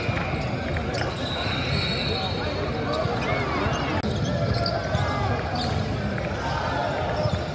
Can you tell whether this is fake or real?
real